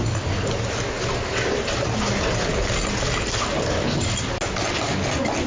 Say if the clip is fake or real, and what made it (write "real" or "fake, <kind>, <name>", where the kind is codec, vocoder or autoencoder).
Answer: real